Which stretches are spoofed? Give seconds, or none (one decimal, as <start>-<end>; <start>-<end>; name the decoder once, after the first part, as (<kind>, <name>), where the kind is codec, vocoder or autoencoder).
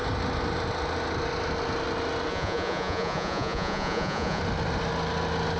2.3-4.4 (vocoder, Vocos)